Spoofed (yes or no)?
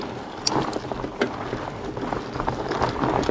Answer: no